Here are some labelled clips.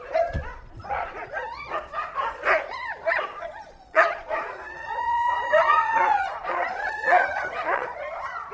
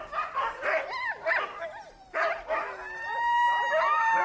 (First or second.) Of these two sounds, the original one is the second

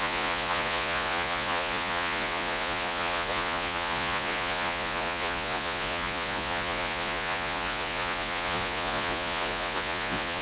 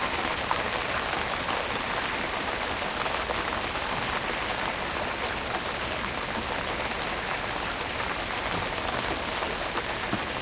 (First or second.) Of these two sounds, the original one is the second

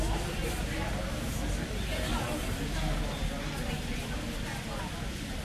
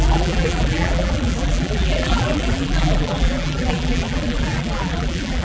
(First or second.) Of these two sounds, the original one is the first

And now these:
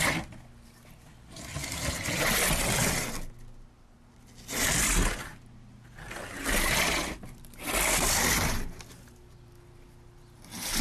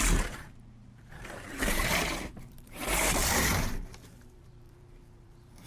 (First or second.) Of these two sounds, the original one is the first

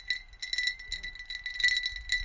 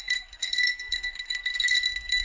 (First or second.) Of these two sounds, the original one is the first